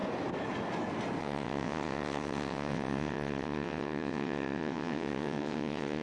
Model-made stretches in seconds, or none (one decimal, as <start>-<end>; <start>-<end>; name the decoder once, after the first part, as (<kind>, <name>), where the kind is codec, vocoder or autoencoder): 1.2-6.0 (vocoder, WaveNeXt)